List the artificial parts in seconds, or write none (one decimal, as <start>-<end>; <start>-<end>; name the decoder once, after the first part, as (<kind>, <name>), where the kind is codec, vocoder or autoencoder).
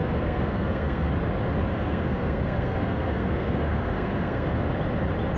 0.0-1.1 (codec, SNAC); 1.7-4.6